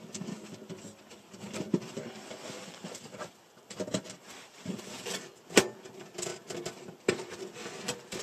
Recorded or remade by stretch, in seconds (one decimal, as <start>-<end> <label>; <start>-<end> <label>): 0.0-0.6 recorded; 0.6-5.1 remade; 5.1-6.3 recorded; 6.3-7.4 remade; 7.4-8.2 recorded